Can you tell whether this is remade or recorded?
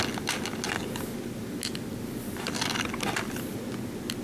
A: recorded